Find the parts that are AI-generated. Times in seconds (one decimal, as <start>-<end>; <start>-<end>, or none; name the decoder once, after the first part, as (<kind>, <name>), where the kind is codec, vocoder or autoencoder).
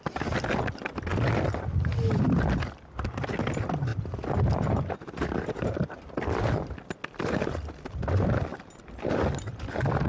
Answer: 3.9-5.9 (vocoder, BigVGAN v2)